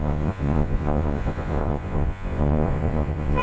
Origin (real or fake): fake